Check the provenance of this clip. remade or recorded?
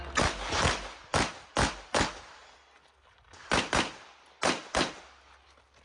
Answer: recorded